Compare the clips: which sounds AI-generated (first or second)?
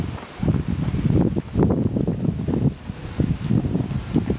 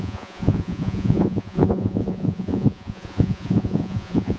second